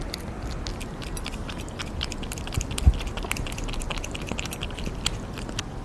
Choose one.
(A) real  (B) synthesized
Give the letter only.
A